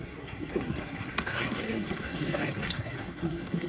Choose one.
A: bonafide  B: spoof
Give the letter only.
B